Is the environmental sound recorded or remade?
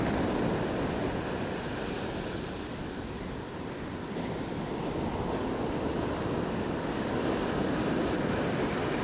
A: recorded